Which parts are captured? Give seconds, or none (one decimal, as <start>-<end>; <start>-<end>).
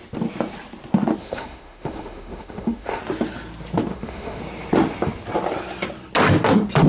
0.0-1.2; 3.0-3.9; 4.4-6.9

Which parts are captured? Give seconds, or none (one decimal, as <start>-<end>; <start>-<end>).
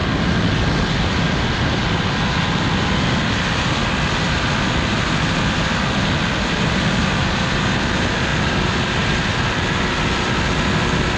0.0-11.2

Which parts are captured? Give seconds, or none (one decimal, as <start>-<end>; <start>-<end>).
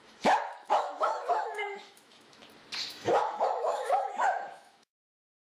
2.4-2.9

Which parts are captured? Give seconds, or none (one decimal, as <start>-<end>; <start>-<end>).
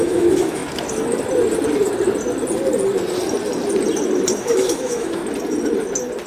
0.6-4.4; 5.2-6.3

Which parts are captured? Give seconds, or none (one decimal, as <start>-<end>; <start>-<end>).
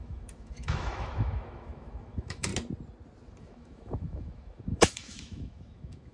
2.5-3.4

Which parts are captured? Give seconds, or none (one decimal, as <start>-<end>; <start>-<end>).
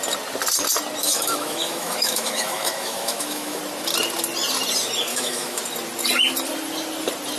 0.0-1.0; 3.6-5.1; 5.6-7.4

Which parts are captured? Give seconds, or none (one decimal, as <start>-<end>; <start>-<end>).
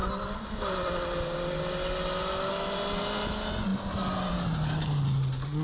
0.0-5.6